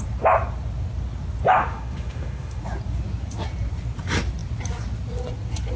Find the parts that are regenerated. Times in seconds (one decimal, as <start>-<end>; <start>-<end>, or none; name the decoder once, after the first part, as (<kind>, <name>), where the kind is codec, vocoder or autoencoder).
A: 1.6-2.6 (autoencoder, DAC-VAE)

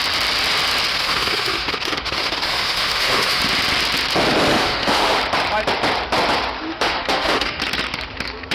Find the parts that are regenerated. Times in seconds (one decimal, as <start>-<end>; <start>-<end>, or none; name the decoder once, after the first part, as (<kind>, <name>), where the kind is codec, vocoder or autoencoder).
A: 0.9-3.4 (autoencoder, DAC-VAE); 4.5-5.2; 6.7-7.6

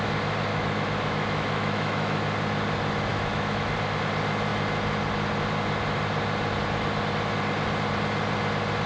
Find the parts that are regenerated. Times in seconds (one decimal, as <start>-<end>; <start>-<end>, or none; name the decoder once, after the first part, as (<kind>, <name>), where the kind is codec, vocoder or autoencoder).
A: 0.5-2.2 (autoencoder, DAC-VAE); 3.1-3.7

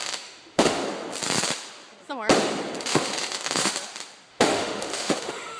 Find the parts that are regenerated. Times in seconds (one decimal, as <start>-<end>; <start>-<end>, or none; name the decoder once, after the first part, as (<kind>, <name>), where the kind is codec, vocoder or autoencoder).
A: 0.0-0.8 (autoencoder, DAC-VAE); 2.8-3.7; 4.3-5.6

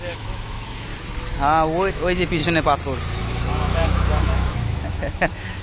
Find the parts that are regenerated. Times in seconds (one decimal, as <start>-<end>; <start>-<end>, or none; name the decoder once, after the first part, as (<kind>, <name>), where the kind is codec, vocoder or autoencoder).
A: 0.0-0.9 (autoencoder, DAC-VAE); 1.9-2.4; 3.2-5.6

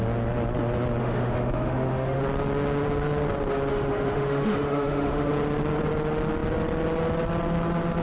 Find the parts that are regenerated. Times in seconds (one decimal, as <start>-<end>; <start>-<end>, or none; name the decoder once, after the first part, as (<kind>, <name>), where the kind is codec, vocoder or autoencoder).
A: 1.0-2.2 (autoencoder, DAC-VAE); 3.7-5.3

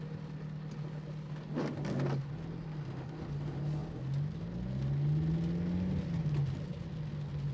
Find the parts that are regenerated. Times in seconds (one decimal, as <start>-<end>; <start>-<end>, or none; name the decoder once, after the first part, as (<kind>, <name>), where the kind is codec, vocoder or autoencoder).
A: none